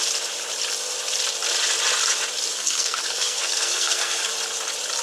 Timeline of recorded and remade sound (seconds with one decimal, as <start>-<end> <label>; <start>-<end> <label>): 0.0-2.5 recorded; 2.5-4.3 remade; 4.3-5.0 recorded